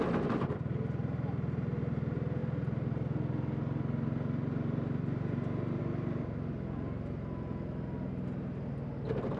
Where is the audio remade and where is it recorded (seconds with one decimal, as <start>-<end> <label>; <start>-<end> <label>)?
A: 0.0-9.4 recorded